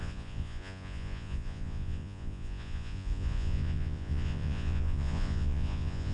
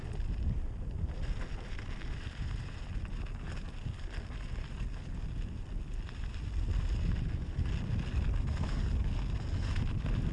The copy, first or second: first